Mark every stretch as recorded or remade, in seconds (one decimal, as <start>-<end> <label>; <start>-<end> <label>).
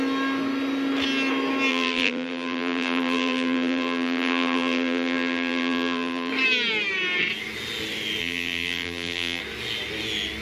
0.0-1.7 recorded; 1.7-6.3 remade; 6.3-8.2 recorded; 8.2-9.4 remade; 9.4-10.4 recorded